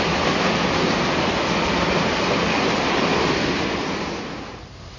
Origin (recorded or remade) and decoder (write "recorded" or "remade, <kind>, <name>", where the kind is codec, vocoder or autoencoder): recorded